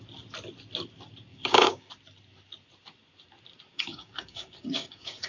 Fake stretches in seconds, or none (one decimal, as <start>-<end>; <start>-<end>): 1.3-1.9; 3.7-5.3